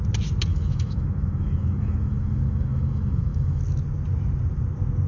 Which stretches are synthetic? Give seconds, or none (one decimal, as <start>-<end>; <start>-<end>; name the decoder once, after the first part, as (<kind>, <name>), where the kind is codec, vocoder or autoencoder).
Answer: 0.5-3.6 (autoencoder, DAC-VAE)